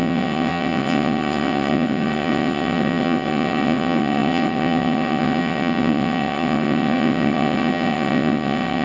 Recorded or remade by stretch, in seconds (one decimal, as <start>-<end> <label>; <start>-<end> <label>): 0.0-8.8 remade